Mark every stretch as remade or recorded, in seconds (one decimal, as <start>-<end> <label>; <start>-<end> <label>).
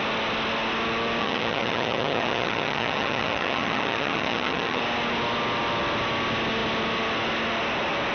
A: 0.0-1.2 recorded; 1.2-4.8 remade; 4.8-8.1 recorded